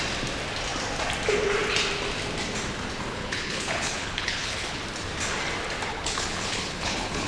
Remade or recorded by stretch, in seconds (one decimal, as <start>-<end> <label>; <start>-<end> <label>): 0.0-3.1 recorded; 3.1-4.8 remade; 4.8-5.9 recorded; 5.9-7.3 remade